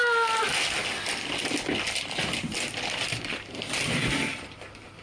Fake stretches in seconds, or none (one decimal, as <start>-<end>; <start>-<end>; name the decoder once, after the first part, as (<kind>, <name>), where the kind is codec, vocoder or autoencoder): none